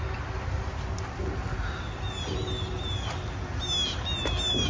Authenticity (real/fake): real